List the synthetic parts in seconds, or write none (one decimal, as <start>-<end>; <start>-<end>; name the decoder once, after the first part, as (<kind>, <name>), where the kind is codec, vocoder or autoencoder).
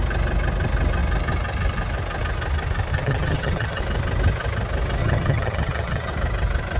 2.9-3.8 (vocoder, HiFi-GAN); 5.0-6.1